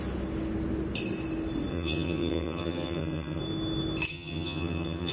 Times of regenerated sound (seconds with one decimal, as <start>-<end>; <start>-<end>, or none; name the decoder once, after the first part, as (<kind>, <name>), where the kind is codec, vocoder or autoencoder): 1.7-3.4 (vocoder, HiFi-GAN); 4.1-5.1